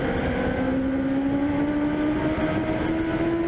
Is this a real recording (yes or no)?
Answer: yes